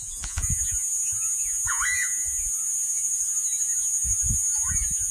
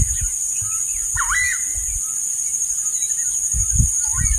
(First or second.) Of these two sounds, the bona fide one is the second